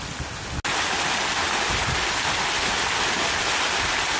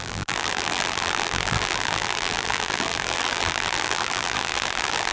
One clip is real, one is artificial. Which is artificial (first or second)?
second